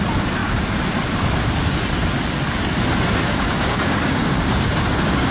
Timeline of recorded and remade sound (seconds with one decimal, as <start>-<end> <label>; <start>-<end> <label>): 0.0-3.2 recorded; 3.2-5.3 remade